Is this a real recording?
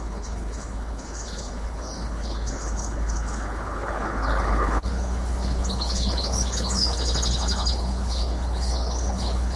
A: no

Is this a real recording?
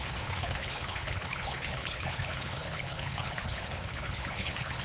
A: no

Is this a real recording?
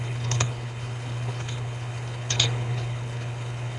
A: no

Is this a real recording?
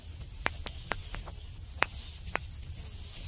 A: yes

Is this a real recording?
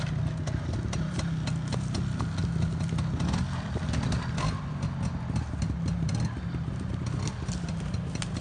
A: yes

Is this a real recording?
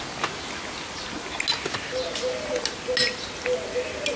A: yes